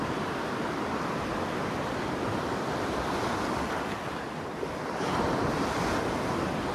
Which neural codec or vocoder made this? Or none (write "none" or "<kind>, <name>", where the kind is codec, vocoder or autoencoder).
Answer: none